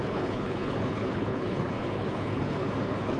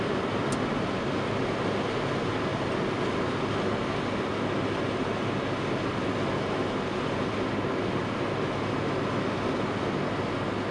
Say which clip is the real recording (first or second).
second